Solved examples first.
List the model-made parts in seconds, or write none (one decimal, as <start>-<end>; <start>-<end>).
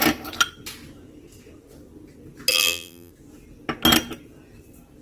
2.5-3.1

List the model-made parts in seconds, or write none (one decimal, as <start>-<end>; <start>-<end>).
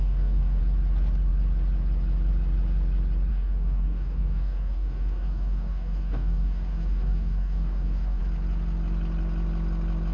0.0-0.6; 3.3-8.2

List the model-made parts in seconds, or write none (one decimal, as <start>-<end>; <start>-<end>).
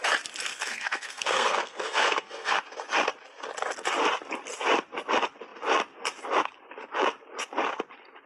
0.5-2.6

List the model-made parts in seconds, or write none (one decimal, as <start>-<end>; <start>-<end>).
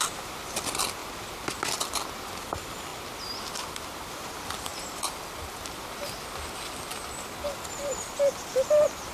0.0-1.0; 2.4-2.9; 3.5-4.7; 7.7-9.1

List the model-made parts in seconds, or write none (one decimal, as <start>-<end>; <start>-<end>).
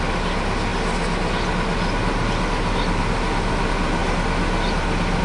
none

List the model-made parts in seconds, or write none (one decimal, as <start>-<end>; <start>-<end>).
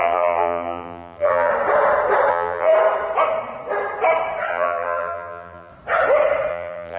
0.0-1.5; 2.3-2.7; 4.5-5.7; 6.5-7.0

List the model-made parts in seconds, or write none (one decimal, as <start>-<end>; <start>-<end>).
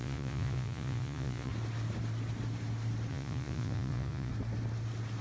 0.0-1.5; 3.1-4.3